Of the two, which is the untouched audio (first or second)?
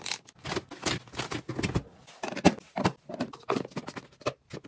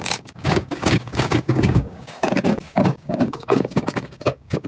first